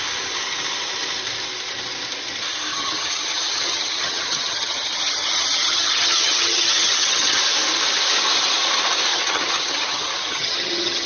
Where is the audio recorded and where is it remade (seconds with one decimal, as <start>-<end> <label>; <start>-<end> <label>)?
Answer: 0.0-2.7 recorded; 2.7-7.4 remade; 7.4-9.1 recorded; 9.1-11.1 remade